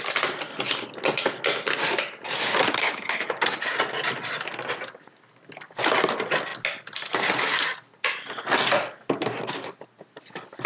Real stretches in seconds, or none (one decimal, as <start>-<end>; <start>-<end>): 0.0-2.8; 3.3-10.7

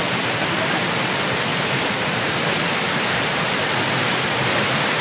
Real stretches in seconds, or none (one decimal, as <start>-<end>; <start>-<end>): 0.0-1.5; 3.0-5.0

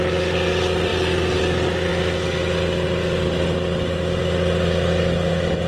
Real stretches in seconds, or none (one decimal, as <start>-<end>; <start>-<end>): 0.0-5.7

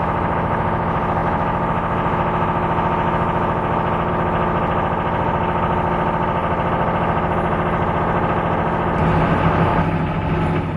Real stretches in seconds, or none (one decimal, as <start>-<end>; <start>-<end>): 0.0-9.7; 10.4-10.8

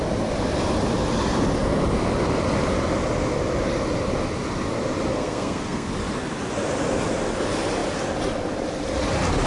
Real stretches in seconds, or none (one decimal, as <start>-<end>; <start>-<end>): 0.0-5.1; 5.9-9.5